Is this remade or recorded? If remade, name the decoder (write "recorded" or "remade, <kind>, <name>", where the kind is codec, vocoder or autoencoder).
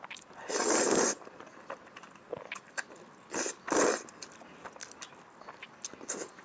recorded